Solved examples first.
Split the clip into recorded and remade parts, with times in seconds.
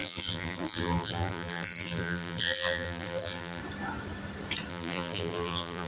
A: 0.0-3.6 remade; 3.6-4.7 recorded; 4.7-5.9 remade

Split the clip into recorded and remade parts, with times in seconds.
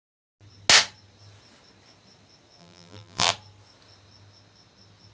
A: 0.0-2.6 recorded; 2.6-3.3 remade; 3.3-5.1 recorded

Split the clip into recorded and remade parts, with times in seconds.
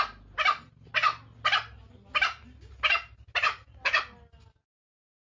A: 0.0-5.4 recorded